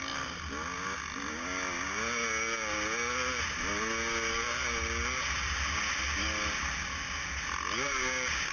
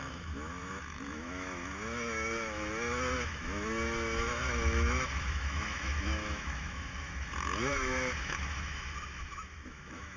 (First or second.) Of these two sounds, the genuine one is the first